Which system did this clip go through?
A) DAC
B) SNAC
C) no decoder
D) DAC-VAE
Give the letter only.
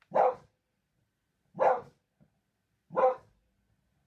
C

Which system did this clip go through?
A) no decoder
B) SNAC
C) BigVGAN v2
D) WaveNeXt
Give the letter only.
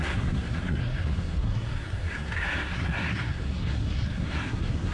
B